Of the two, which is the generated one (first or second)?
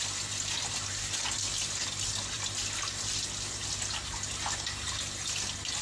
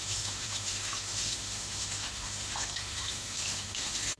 second